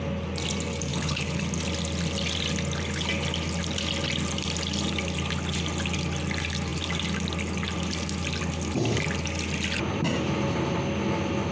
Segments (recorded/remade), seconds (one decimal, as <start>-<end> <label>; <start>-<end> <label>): 0.0-0.9 recorded; 0.9-1.4 remade; 1.4-11.5 recorded